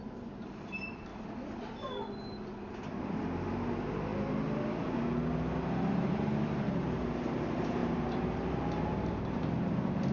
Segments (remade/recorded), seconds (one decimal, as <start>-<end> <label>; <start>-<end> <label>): 0.0-1.1 remade; 1.1-3.1 recorded; 3.1-4.1 remade; 4.1-5.9 recorded; 5.9-10.1 remade